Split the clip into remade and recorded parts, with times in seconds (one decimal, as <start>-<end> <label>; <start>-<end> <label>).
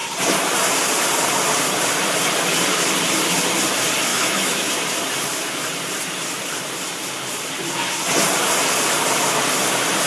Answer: 0.0-4.1 recorded; 4.1-4.7 remade; 4.7-10.1 recorded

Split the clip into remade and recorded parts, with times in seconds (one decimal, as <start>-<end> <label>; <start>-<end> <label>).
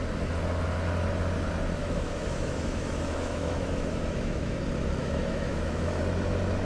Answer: 0.0-1.8 recorded; 1.8-4.6 remade; 4.6-5.0 recorded; 5.0-6.0 remade; 6.0-6.6 recorded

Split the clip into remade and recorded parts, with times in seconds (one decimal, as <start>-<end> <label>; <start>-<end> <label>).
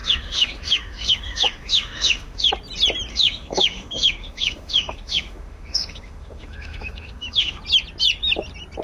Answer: 0.0-2.5 remade; 2.5-3.1 recorded; 3.1-7.6 remade; 7.6-8.8 recorded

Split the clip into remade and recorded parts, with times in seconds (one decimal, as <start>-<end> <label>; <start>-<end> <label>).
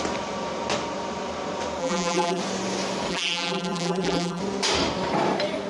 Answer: 0.0-1.8 recorded; 1.8-2.4 remade; 2.4-3.1 recorded; 3.1-4.4 remade; 4.4-5.7 recorded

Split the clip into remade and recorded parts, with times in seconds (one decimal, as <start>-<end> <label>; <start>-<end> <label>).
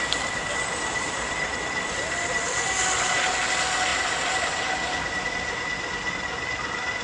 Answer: 0.0-7.0 recorded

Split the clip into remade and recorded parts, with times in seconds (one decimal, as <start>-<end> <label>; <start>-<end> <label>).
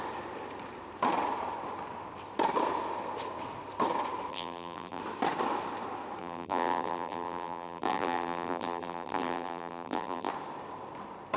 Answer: 0.0-4.3 recorded; 4.3-5.0 remade; 5.0-6.2 recorded; 6.2-10.3 remade; 10.3-11.4 recorded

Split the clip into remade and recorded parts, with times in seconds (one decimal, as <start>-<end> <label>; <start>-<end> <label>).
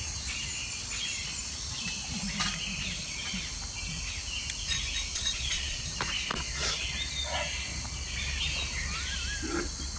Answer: 0.0-5.1 recorded; 5.1-5.8 remade; 5.8-6.3 recorded; 6.3-6.9 remade; 6.9-10.0 recorded